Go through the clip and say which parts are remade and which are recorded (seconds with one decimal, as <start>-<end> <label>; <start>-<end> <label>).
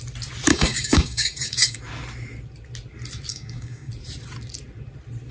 0.0-0.5 recorded; 0.5-1.8 remade; 1.8-3.3 recorded; 3.3-3.9 remade; 3.9-5.3 recorded